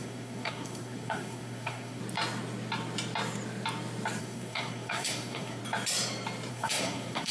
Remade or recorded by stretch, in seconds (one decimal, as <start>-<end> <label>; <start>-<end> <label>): 0.0-2.0 remade; 2.0-4.2 recorded; 4.2-5.6 remade; 5.6-6.5 recorded; 6.5-7.3 remade